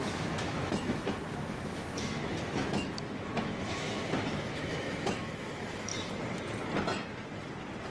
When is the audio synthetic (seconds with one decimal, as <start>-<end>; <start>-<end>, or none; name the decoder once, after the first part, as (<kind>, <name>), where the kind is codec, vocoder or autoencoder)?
0.0-5.9 (autoencoder, DAC-VAE)

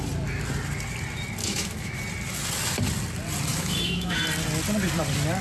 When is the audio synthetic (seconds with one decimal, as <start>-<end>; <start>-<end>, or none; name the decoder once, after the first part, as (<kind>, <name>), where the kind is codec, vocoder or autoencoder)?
1.4-2.0 (autoencoder, DAC-VAE); 3.5-4.2

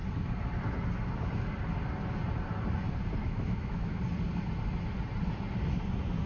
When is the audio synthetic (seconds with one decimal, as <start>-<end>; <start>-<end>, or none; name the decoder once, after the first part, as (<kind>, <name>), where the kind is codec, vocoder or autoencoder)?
3.2-4.0 (autoencoder, DAC-VAE)

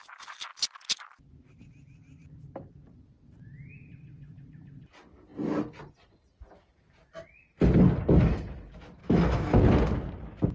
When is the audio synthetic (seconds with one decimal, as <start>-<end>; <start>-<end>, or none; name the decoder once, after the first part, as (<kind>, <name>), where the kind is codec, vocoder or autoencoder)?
9.0-9.6 (autoencoder, DAC-VAE)